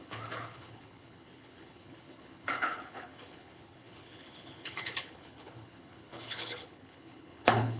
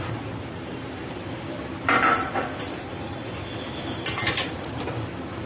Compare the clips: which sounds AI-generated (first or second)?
first